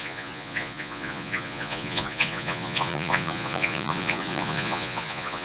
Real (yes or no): no